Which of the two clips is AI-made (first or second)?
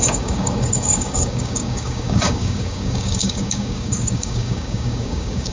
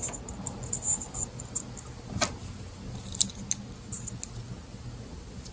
first